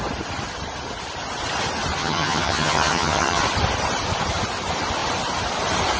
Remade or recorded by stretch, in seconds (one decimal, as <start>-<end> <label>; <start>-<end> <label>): 0.0-2.0 recorded; 2.0-3.4 remade; 3.4-6.0 recorded